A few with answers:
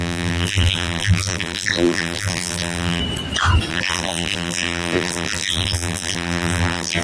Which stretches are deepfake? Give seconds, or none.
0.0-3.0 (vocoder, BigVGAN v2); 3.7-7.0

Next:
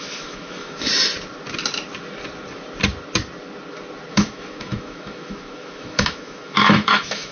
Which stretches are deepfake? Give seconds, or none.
0.0-0.9 (autoencoder, DAC-VAE); 4.1-7.3

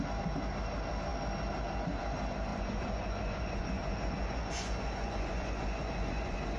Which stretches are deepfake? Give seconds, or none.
2.5-6.6 (vocoder, Vocos)

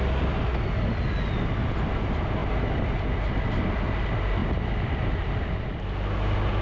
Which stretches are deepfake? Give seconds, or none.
4.4-5.6 (vocoder, BigVGAN v2)

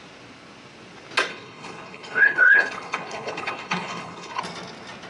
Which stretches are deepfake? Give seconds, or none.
1.3-4.4 (codec, HILCodec)

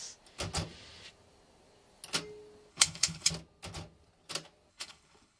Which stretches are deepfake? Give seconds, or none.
2.7-3.3 (codec, HILCodec); 4.7-5.4

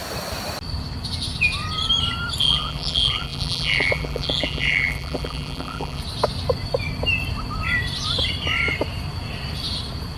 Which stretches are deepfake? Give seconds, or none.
2.4-6.0 (vocoder, BigVGAN v2)

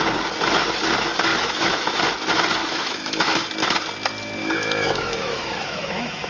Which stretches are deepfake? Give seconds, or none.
1.3-2.0 (autoencoder, DAC-VAE); 2.6-3.5; 4.4-6.3